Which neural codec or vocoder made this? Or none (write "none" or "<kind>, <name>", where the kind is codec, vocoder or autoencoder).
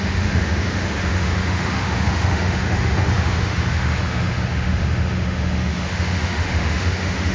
autoencoder, DAC-VAE